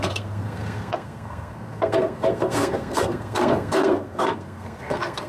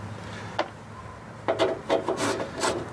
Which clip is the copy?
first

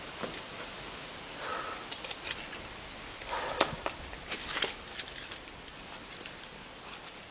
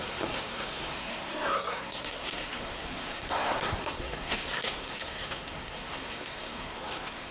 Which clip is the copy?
second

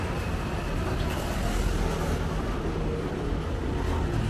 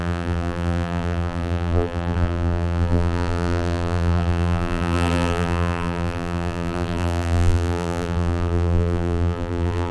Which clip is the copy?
second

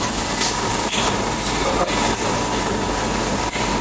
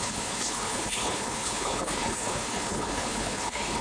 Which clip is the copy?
second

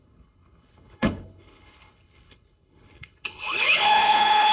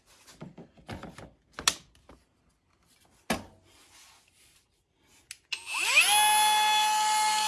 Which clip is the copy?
first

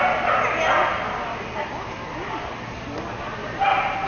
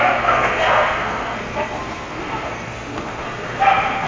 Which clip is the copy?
second